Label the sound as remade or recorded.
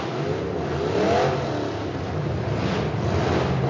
recorded